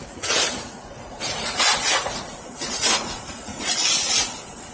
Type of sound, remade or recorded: remade